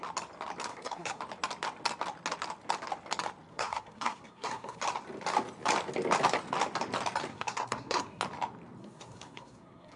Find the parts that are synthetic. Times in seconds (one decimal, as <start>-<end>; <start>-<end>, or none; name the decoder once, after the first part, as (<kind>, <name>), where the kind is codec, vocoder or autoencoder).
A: 0.7-1.2 (codec, SNAC); 3.5-4.8; 7.3-8.2; 8.8-10.0